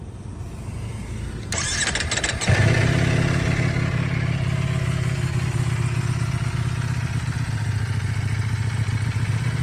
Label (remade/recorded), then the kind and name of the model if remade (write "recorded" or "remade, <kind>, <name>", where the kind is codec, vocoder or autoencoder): recorded